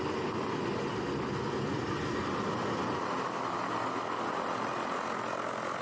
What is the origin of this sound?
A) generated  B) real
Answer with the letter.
B